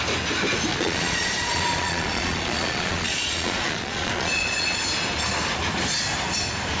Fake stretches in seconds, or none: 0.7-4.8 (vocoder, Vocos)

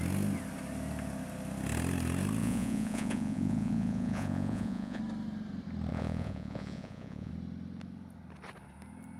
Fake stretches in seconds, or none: 2.4-5.0 (vocoder, Vocos); 5.9-7.3

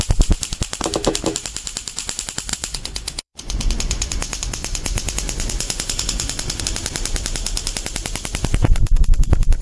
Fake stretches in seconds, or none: 2.5-6.6 (vocoder, Vocos)